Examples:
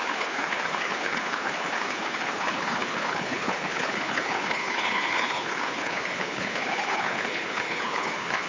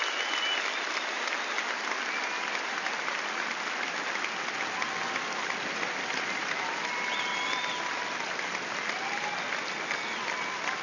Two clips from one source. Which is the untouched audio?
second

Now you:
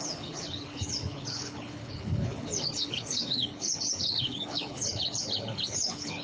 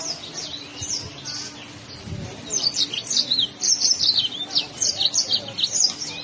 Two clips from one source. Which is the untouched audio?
second